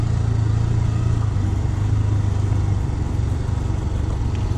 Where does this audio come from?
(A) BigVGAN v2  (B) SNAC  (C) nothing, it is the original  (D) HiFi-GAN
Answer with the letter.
C